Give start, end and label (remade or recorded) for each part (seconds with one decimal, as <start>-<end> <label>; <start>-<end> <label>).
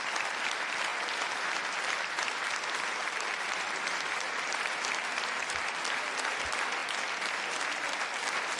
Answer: 0.0-3.0 recorded; 3.0-5.4 remade; 5.4-8.6 recorded